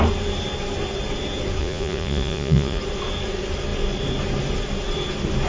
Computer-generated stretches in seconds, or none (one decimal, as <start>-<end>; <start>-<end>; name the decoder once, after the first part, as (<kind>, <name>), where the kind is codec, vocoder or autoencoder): 1.6-2.8 (vocoder, Vocos)